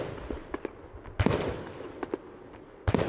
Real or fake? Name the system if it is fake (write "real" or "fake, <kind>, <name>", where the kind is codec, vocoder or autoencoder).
real